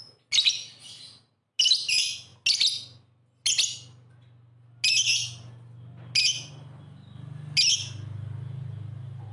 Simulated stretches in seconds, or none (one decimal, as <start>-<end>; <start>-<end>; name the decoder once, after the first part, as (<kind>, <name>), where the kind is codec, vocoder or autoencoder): none